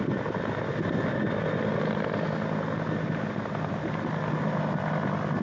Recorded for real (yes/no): yes